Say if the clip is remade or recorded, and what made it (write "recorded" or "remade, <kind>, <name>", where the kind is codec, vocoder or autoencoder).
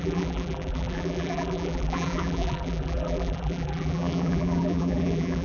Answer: remade, vocoder, BigVGAN v2